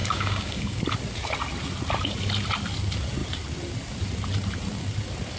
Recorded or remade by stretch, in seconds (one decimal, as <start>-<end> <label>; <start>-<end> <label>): 0.0-0.8 remade; 0.8-5.4 recorded